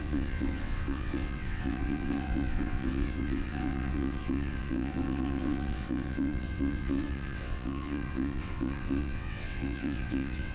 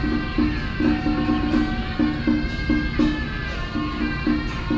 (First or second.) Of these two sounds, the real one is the second